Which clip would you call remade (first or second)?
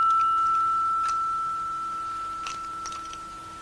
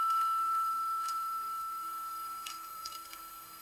second